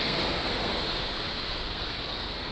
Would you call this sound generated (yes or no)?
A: yes